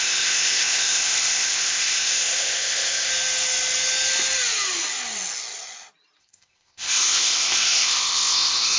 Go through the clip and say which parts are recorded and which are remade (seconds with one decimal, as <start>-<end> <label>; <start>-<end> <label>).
0.0-3.1 remade; 3.1-6.2 recorded; 6.2-8.8 remade